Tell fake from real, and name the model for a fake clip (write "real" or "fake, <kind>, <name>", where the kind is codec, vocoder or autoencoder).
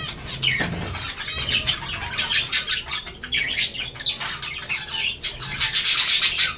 real